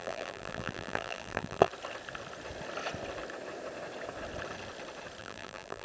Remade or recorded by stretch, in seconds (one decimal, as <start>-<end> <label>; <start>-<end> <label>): 0.0-1.7 remade; 1.7-5.2 recorded; 5.2-5.8 remade

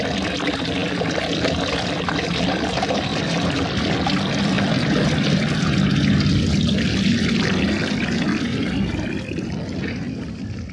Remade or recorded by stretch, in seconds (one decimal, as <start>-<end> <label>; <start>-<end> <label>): 0.0-10.7 recorded

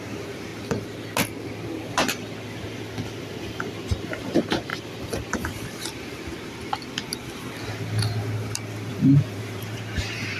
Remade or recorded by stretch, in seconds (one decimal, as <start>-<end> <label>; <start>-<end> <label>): 0.0-0.5 remade; 0.5-3.2 recorded; 3.2-4.7 remade; 4.7-8.9 recorded; 8.9-10.4 remade

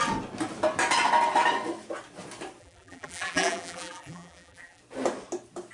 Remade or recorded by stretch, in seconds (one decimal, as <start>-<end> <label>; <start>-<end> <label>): 0.0-2.6 recorded; 2.6-4.8 remade; 4.8-5.7 recorded

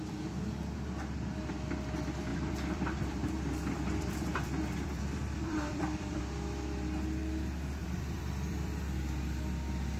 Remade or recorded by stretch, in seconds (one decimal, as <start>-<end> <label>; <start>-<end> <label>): 0.0-2.3 recorded; 2.3-6.2 remade; 6.2-7.8 recorded; 7.8-8.8 remade; 8.8-10.0 recorded

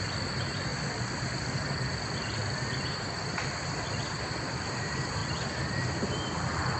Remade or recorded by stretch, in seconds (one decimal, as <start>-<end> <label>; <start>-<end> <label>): 0.0-0.7 remade; 0.7-4.4 recorded; 4.4-5.2 remade; 5.2-6.8 recorded